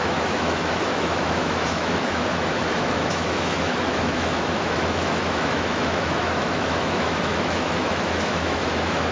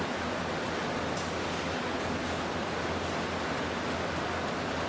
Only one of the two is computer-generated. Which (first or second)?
first